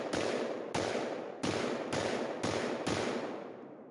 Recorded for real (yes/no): yes